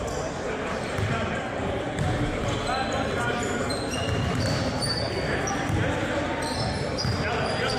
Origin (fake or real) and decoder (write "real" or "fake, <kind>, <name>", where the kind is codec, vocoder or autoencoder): fake, vocoder, BigVGAN v2